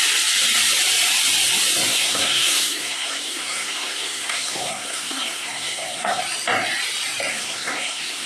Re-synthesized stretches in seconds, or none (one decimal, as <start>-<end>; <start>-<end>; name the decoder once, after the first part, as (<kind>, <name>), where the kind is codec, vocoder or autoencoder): 1.9-6.2 (codec, SNAC); 7.3-8.3